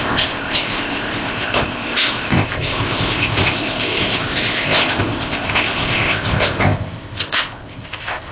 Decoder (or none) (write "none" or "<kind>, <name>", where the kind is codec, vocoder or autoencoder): codec, ZipCodec